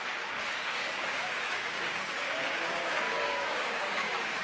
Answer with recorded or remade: remade